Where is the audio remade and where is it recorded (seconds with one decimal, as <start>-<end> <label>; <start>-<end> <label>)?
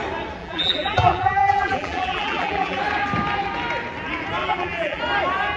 0.0-0.4 recorded; 0.4-2.8 remade; 2.8-4.4 recorded; 4.4-5.0 remade; 5.0-5.6 recorded